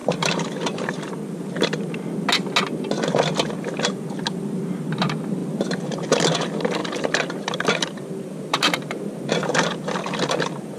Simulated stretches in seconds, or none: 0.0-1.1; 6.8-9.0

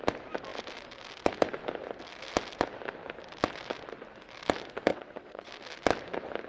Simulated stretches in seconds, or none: 4.9-5.5

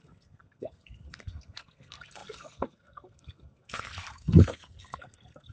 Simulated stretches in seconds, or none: 0.0-5.5

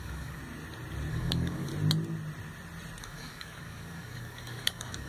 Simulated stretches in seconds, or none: 0.0-0.4; 1.1-1.7; 3.0-5.1

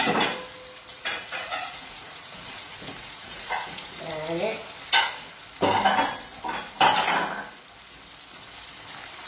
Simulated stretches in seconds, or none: 0.9-4.0